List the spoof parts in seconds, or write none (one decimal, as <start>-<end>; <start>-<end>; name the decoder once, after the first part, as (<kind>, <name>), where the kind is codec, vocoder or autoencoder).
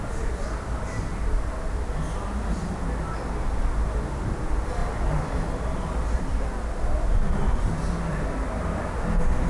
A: 4.8-6.2 (vocoder, BigVGAN v2)